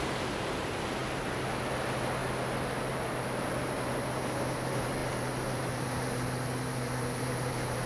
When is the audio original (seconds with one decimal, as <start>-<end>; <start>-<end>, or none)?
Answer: 1.0-1.6; 2.2-2.9